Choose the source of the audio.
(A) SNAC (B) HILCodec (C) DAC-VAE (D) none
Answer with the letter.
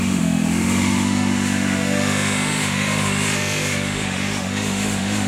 C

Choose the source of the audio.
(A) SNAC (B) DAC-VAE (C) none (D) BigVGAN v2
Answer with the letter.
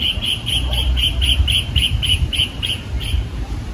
D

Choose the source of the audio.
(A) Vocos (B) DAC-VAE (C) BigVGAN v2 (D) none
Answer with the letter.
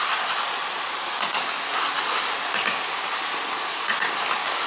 D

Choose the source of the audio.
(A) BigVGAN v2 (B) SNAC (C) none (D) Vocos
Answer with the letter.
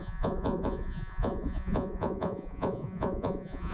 D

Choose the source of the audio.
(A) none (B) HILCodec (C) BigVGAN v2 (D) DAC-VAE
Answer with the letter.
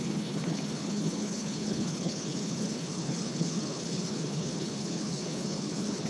B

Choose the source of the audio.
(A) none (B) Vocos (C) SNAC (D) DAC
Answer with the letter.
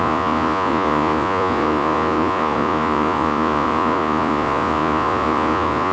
B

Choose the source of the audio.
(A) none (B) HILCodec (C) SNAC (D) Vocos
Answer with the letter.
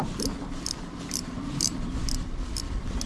A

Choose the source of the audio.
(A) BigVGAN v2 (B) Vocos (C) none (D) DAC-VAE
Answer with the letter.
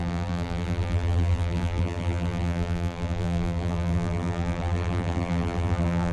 A